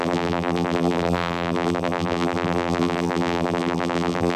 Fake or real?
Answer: fake